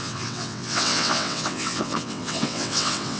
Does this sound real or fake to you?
fake